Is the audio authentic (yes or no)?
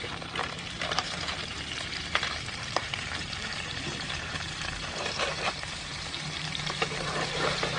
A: no